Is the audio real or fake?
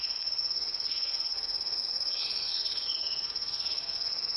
fake